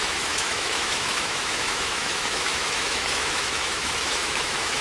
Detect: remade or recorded remade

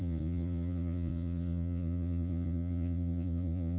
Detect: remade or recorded remade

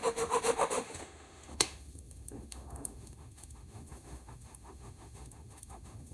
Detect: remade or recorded remade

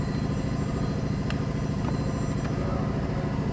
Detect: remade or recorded recorded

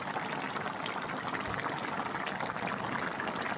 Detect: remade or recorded recorded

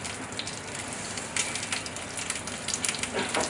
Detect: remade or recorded recorded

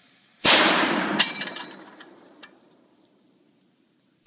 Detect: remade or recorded remade